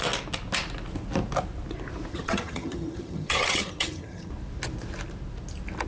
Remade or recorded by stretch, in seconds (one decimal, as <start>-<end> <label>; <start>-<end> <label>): 0.0-2.1 recorded; 2.1-4.3 remade; 4.3-5.9 recorded